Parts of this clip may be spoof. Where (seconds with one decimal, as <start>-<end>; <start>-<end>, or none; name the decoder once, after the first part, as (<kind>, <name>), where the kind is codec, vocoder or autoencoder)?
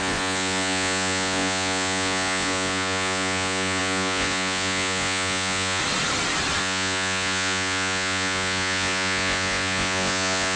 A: 0.0-5.8 (vocoder, Vocos); 6.6-10.6